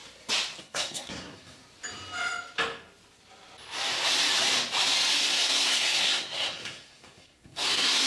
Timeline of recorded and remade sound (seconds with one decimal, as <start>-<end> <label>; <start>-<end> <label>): 0.0-0.6 recorded; 0.6-1.6 remade; 1.6-5.2 recorded; 5.2-8.1 remade